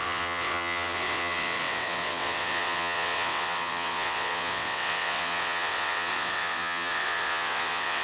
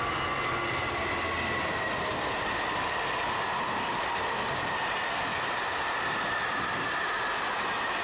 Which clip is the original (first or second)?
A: second